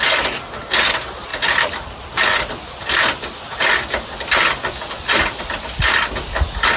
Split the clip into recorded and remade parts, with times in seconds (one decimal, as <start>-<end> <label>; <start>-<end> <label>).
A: 0.0-6.8 recorded